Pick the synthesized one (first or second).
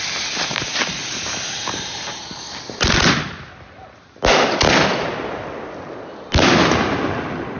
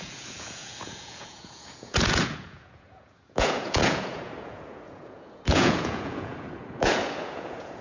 second